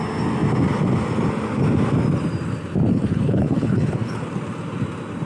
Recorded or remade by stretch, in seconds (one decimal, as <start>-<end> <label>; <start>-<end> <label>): 0.0-2.9 recorded; 2.9-4.3 remade; 4.3-5.3 recorded